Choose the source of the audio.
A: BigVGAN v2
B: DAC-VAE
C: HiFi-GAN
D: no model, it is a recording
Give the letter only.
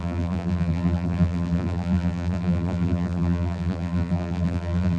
A